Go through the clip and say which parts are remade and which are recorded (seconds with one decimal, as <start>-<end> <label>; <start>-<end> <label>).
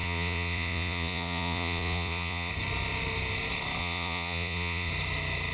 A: 0.0-2.5 remade; 2.5-3.8 recorded; 3.8-4.9 remade; 4.9-5.5 recorded